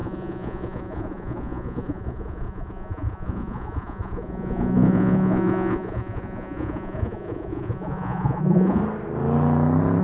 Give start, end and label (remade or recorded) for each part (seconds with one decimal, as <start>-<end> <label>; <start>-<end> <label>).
0.0-8.8 remade; 8.8-10.0 recorded